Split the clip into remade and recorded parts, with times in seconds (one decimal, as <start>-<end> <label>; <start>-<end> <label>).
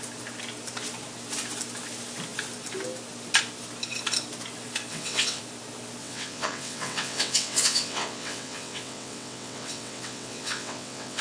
0.0-4.9 recorded; 4.9-5.4 remade; 5.4-6.0 recorded; 6.0-11.2 remade